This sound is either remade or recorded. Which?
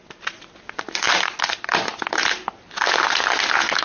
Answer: recorded